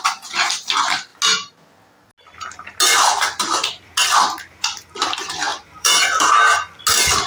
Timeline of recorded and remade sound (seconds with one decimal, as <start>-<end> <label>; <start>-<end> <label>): 0.0-5.5 recorded; 5.5-6.0 remade; 6.0-7.3 recorded